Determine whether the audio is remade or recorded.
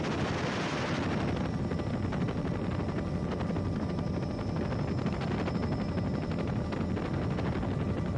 recorded